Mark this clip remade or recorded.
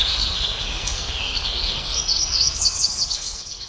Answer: remade